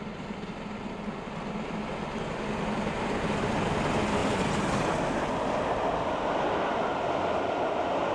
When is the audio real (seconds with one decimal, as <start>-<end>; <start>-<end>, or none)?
0.0-8.1